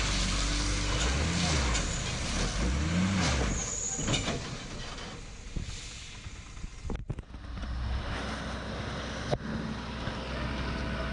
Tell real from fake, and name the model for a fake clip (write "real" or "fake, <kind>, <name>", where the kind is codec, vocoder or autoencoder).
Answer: real